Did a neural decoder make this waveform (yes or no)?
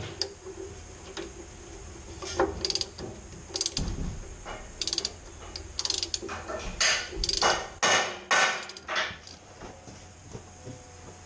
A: no